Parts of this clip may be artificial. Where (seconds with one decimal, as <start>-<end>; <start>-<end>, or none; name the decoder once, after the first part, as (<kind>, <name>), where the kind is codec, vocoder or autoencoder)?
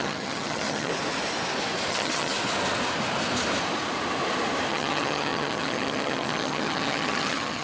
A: 0.0-0.9 (vocoder, HiFi-GAN); 1.9-2.3; 4.7-7.6